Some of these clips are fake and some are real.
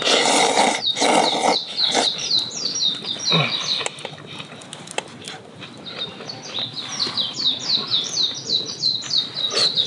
real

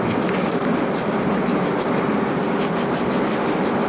fake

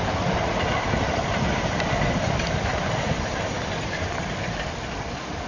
fake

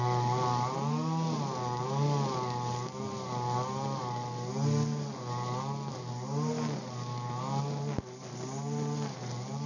real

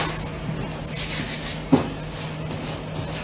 real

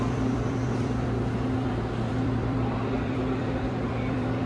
fake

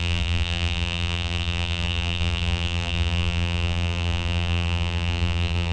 fake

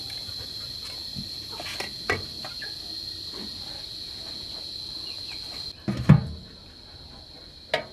real